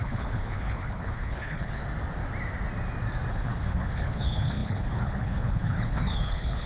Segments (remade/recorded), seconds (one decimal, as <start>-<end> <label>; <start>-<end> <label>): 0.0-1.8 remade; 1.8-3.3 recorded; 3.3-6.7 remade